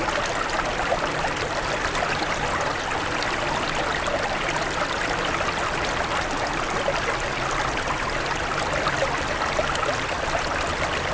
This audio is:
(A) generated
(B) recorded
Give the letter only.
B